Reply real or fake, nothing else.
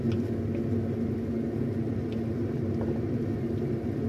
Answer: real